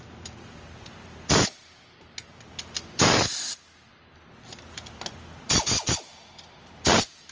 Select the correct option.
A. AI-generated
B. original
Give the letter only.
B